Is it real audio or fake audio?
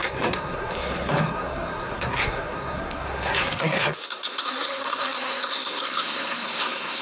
fake